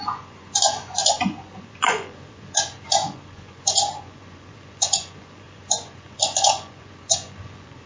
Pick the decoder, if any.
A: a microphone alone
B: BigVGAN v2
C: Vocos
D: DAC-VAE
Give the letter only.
C